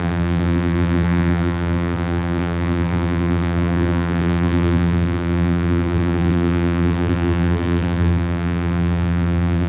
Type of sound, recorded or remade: remade